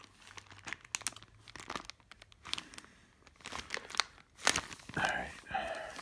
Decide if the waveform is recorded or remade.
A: recorded